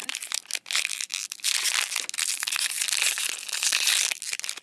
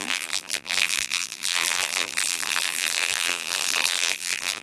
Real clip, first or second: first